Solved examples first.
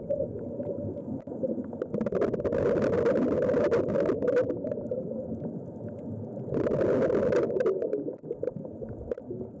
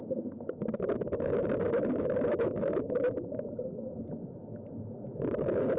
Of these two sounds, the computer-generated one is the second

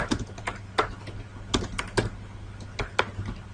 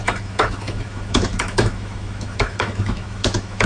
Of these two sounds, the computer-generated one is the second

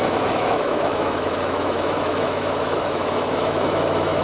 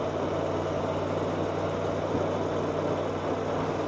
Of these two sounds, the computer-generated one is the first